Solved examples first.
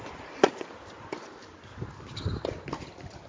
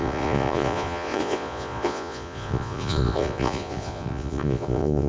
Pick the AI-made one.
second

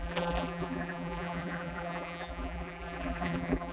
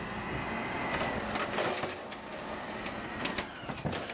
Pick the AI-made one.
first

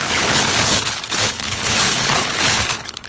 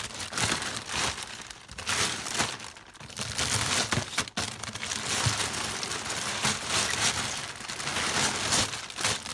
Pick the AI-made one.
first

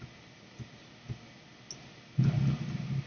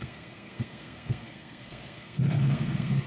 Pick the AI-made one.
second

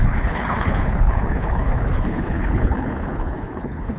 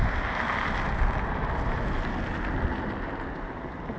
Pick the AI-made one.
first